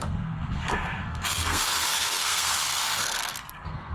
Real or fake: fake